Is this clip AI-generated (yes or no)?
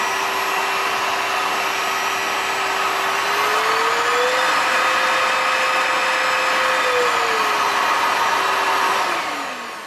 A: no